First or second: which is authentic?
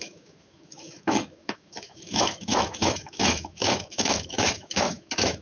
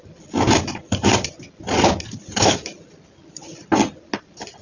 second